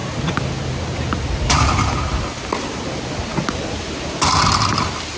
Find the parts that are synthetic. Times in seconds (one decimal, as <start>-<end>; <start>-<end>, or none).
none